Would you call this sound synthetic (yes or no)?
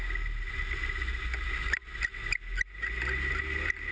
no